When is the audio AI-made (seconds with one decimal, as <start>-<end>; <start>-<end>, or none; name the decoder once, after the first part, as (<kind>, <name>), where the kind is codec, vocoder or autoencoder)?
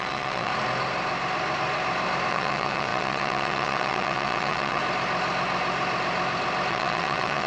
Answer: 0.0-0.5 (vocoder, WaveNeXt); 2.3-4.8; 6.7-7.5